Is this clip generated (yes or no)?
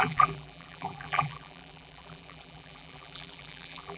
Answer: yes